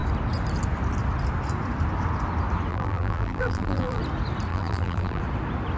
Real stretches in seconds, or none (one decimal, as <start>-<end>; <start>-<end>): 0.0-2.7; 4.0-4.5; 5.2-5.8